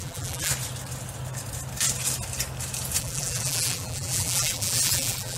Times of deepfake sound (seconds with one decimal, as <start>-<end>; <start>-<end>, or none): 0.0-0.5; 3.0-5.4